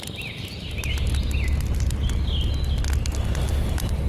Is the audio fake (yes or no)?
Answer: no